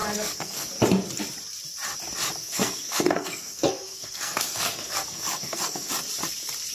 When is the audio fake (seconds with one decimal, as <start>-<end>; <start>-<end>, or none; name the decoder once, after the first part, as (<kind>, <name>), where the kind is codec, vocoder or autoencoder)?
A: 0.0-0.7 (codec, SNAC); 2.4-5.9